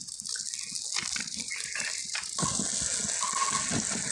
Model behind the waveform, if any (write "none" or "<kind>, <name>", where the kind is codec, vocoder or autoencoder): none